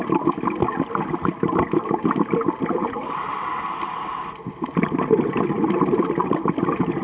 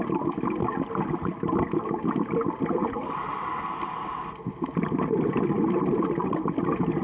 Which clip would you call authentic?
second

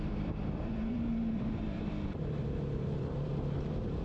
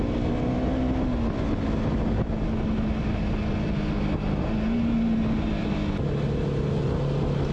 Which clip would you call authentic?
second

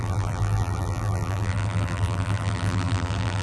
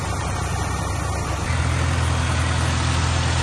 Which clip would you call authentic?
second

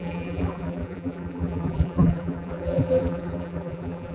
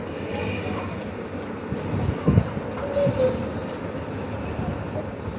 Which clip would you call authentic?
second